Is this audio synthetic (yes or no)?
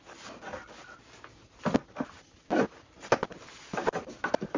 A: no